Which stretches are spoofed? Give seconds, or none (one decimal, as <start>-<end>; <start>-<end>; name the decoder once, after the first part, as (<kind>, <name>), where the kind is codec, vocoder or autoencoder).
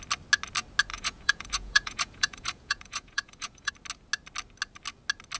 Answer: 0.9-3.7 (vocoder, Vocos)